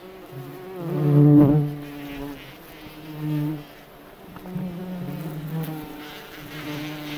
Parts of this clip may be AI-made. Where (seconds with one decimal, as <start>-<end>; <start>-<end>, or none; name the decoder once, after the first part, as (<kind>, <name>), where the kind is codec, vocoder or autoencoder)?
none